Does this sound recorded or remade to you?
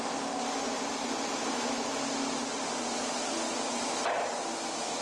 recorded